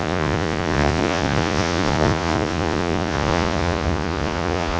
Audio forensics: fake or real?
fake